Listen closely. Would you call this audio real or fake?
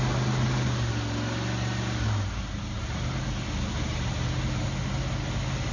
real